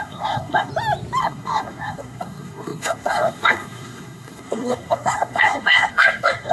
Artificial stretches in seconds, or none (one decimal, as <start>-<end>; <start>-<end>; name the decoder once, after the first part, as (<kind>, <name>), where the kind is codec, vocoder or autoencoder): 0.0-0.7 (codec, SNAC); 1.2-6.5